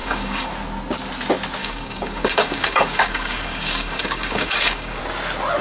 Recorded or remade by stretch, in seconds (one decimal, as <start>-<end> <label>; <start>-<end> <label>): 0.0-0.5 remade; 0.5-1.6 recorded; 1.6-5.0 remade; 5.0-5.6 recorded